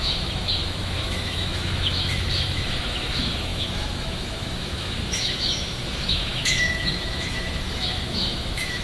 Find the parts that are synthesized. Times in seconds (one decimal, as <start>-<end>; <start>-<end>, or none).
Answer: 0.0-8.8